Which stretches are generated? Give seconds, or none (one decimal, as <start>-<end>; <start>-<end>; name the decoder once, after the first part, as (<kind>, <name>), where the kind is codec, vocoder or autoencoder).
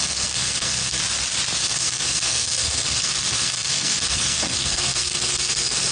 0.0-1.0 (codec, SNAC); 1.6-5.9